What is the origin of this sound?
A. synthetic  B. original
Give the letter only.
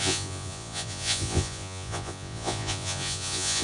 A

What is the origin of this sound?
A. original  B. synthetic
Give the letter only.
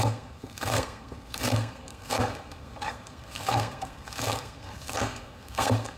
B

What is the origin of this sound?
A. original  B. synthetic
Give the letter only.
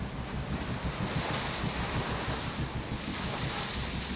A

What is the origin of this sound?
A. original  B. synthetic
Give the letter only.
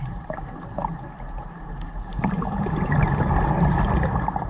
A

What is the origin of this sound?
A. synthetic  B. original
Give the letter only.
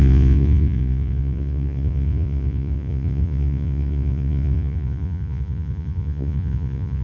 A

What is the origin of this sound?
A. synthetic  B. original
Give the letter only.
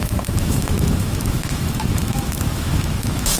A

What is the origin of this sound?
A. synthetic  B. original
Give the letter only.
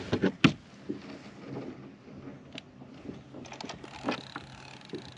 B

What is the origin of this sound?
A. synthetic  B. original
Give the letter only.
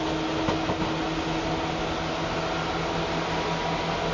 B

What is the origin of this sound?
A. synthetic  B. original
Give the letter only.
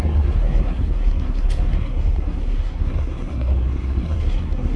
A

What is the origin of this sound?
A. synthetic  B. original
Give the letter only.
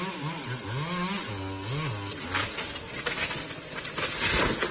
B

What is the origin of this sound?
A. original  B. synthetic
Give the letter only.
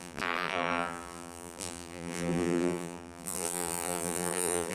B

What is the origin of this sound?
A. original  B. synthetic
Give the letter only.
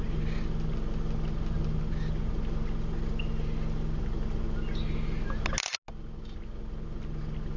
A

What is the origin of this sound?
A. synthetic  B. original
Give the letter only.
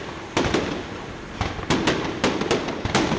B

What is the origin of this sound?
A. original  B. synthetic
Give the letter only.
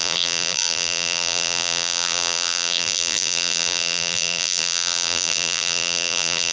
B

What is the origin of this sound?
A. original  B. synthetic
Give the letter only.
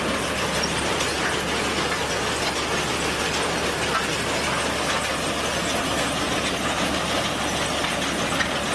A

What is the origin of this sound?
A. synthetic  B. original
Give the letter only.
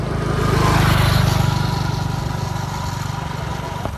B